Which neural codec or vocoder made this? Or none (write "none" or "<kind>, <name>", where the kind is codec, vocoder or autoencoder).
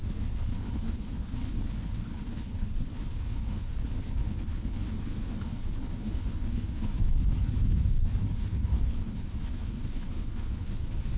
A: codec, HILCodec